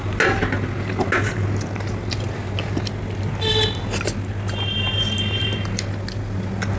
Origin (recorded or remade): recorded